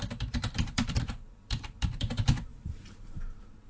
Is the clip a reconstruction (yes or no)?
yes